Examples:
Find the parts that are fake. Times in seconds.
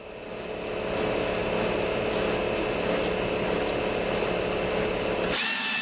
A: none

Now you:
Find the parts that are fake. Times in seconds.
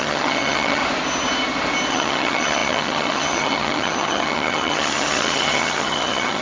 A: 0.0-0.8 (vocoder, HiFi-GAN); 1.9-6.4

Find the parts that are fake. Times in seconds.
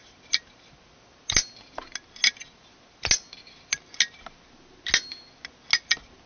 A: none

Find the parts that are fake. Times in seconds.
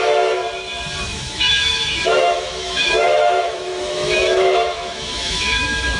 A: 0.0-0.4 (autoencoder, DAC-VAE); 1.0-6.0